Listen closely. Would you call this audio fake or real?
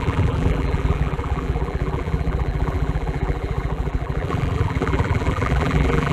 fake